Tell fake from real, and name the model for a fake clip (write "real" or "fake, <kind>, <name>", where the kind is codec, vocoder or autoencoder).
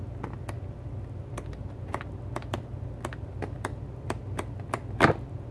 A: real